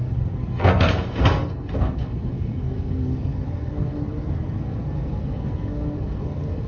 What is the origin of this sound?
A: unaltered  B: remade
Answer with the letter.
B